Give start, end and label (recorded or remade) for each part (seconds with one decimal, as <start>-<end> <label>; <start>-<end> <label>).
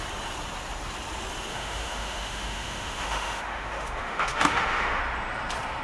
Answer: 0.0-1.5 recorded; 1.5-5.0 remade; 5.0-5.8 recorded